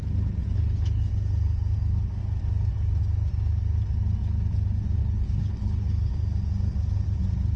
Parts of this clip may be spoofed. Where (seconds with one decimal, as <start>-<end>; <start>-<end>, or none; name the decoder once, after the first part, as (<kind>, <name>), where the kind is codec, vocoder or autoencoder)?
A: 0.4-1.0 (codec, HILCodec); 5.0-6.1